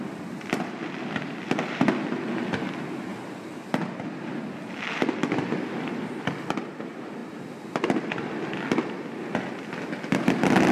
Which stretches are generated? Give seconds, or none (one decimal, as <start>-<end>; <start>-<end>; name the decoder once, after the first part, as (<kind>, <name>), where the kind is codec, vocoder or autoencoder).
none